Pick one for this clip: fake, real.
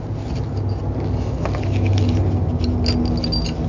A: real